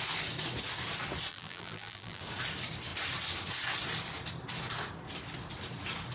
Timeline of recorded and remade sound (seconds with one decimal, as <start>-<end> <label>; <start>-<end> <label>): 0.0-1.3 recorded; 1.3-2.2 remade; 2.2-6.1 recorded